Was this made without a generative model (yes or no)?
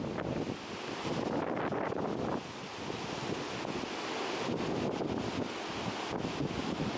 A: yes